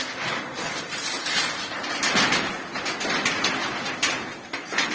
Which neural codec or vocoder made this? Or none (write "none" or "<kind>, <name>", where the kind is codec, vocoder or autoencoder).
none